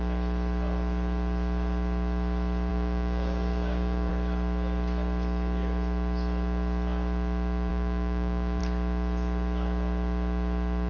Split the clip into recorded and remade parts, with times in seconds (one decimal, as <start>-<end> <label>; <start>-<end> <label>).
0.0-2.7 recorded; 2.7-4.1 remade; 4.1-7.7 recorded; 7.7-8.6 remade; 8.6-10.9 recorded